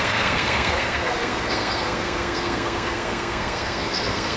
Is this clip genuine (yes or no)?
no